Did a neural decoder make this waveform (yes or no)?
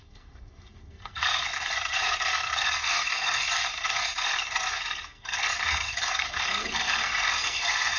yes